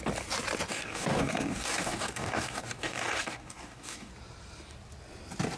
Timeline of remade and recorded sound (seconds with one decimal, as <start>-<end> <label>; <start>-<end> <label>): 0.0-0.7 recorded; 0.7-4.1 remade; 4.1-5.6 recorded